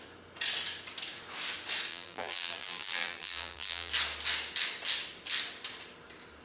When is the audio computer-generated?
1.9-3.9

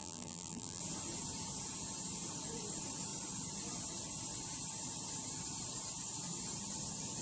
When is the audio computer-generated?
0.0-0.8

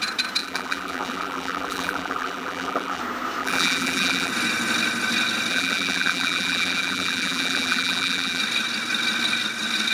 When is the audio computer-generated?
0.4-3.0; 3.4-4.3; 5.5-8.4

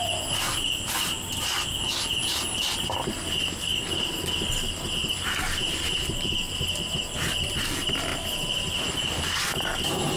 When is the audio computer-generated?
3.7-4.3; 5.0-6.5; 8.1-8.8

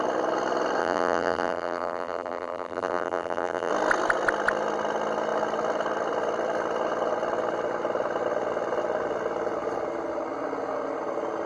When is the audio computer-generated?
0.8-3.7

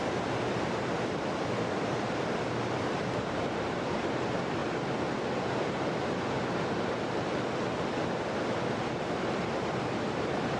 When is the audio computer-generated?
0.0-4.6; 5.3-10.6

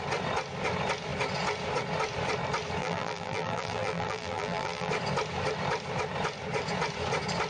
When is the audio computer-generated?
2.8-4.9